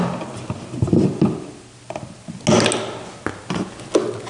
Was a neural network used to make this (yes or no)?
no